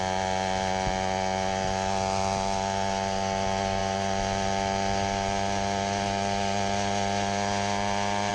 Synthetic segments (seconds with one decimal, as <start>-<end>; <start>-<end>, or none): none